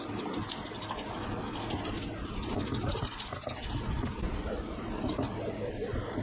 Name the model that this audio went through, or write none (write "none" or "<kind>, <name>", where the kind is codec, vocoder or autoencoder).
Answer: none